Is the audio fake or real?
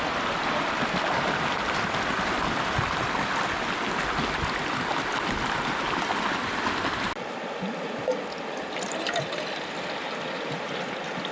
real